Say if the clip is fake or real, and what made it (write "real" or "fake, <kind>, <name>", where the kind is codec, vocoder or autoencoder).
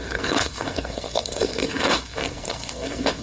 fake, codec, SNAC